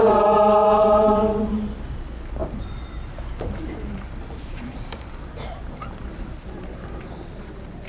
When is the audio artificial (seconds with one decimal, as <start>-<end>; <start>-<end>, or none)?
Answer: 2.4-5.1